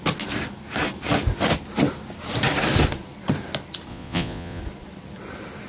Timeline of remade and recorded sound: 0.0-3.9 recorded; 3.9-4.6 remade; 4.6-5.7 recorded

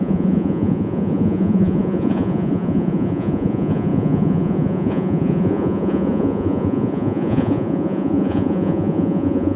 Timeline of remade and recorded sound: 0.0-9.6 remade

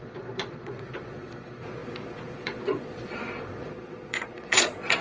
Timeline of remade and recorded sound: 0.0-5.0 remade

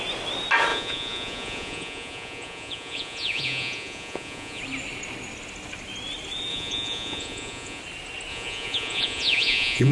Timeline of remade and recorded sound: 0.0-0.7 recorded; 0.7-4.6 remade; 4.6-6.5 recorded; 6.5-7.8 remade; 7.8-8.3 recorded; 8.3-9.9 remade